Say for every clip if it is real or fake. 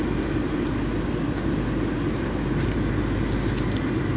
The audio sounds real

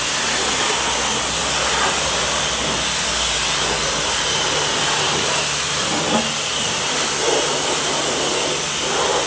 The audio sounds real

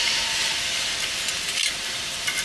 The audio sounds fake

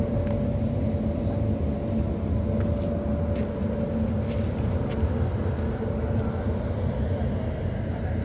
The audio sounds real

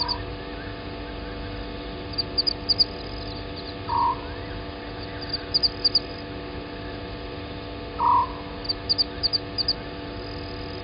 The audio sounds real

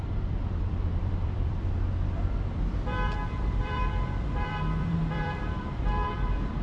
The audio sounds fake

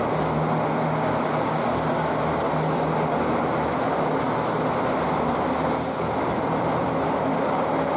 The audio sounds real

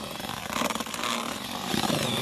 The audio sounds real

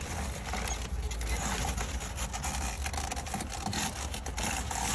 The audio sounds real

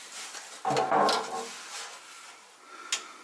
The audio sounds real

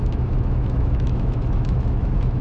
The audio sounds fake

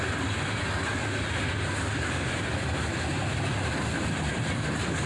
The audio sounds real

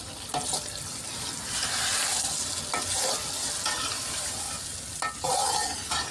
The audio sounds real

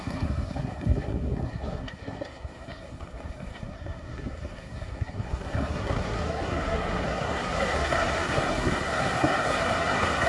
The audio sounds fake